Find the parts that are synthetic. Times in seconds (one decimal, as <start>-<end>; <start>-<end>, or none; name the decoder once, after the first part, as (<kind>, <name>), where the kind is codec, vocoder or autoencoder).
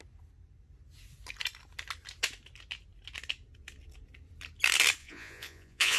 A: 5.0-6.0 (vocoder, Vocos)